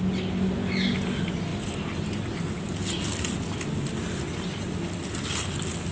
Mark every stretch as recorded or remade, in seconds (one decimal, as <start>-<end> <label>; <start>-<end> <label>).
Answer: 0.0-5.9 recorded